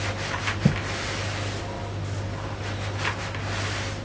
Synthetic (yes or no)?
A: no